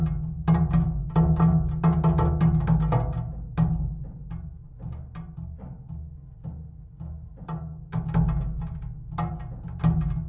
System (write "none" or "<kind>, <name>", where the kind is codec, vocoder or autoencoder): none